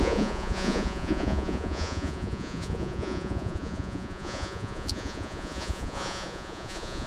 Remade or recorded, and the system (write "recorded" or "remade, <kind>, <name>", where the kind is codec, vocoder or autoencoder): remade, vocoder, Vocos